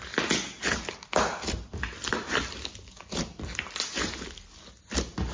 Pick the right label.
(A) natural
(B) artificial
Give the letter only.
A